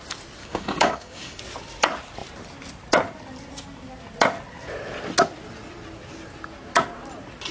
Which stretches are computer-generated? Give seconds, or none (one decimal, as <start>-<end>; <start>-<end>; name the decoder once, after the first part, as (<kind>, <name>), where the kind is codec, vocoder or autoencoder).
0.4-1.4 (codec, DAC)